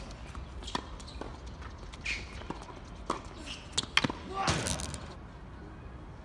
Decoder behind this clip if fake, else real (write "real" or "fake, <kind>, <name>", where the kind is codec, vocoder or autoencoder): real